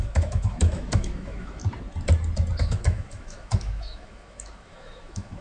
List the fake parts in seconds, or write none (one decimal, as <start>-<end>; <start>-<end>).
0.0-1.6; 2.6-5.4